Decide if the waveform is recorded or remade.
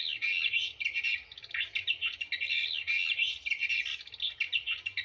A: recorded